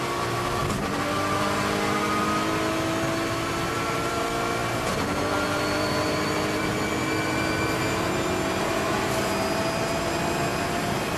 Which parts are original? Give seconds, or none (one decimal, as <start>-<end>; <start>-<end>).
0.0-11.2